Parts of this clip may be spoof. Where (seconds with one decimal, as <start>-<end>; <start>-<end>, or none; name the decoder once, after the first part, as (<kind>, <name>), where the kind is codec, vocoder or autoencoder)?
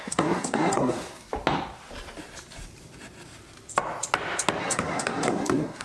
0.0-1.3 (codec, SNAC); 4.6-5.8